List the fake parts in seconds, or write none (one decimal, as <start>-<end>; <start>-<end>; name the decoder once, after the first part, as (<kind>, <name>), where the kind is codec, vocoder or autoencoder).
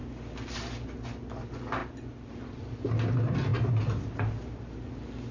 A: none